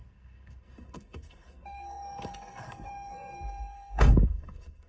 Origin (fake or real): fake